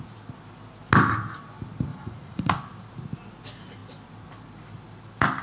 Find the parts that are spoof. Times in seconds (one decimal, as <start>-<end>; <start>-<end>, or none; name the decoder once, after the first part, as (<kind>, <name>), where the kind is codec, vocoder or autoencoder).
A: 1.9-2.5 (vocoder, Vocos)